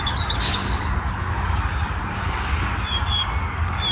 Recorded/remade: remade